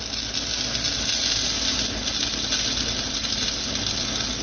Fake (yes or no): no